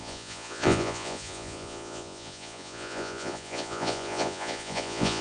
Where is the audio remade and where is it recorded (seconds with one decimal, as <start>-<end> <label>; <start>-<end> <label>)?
0.0-5.2 remade